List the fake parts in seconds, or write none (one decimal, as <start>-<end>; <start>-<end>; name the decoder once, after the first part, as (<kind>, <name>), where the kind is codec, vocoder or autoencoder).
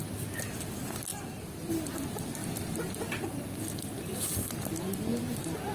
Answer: 1.1-1.7 (vocoder, BigVGAN v2); 2.4-3.4